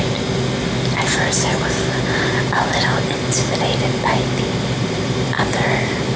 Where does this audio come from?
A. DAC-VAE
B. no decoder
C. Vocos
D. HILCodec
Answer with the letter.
B